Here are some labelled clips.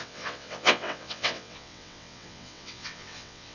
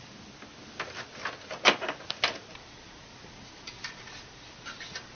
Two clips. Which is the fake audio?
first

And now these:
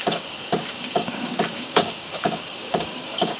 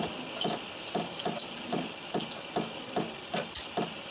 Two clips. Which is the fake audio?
first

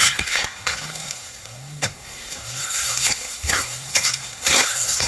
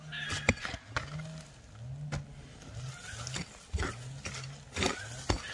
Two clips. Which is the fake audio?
first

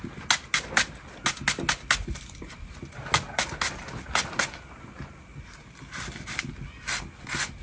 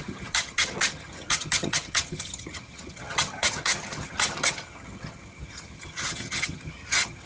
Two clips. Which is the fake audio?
second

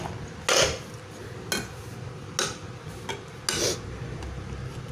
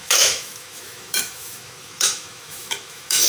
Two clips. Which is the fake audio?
second